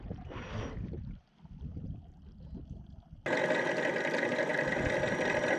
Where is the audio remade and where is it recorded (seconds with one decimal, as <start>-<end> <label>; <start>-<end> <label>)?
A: 0.0-5.6 recorded